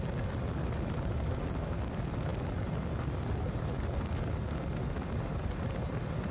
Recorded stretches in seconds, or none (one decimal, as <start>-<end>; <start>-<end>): 0.0-6.3